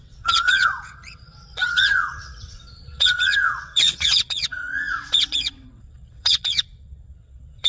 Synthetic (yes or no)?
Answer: yes